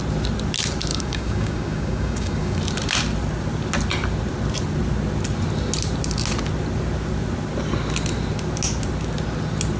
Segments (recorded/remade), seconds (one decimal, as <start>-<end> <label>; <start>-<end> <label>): 0.0-0.9 recorded; 0.9-2.6 remade; 2.6-9.8 recorded